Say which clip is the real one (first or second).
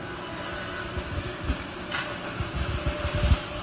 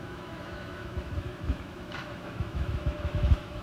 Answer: first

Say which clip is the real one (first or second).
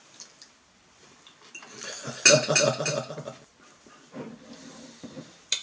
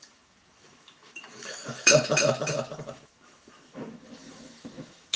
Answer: first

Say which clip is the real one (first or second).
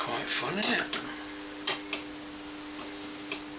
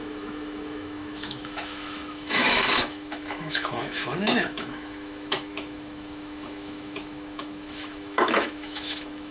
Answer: first